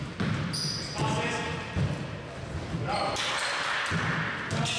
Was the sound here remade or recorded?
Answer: recorded